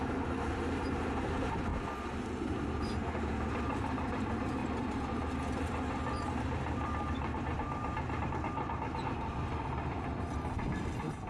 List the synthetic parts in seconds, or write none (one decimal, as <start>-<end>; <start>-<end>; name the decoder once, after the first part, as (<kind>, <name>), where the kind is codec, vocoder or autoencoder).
0.0-1.7 (vocoder, BigVGAN v2); 2.8-11.3